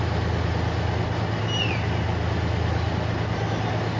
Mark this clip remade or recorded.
recorded